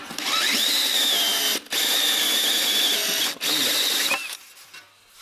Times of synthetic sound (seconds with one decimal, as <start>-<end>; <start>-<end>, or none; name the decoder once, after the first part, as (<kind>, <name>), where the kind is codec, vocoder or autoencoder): none